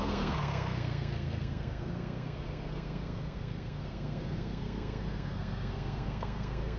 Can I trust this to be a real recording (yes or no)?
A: no